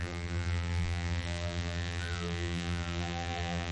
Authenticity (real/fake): fake